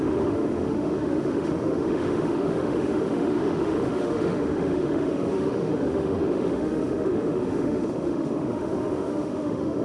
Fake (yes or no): yes